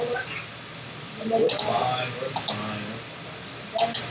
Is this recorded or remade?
recorded